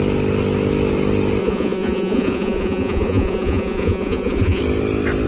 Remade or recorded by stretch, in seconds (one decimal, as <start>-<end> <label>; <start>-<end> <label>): 0.0-1.4 recorded; 1.4-4.6 remade; 4.6-5.3 recorded